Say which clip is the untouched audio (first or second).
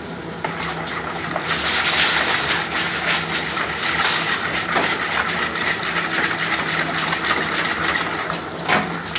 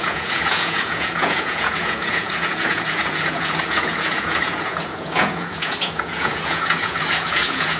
first